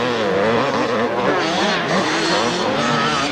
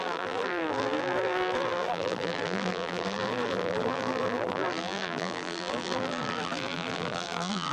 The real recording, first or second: first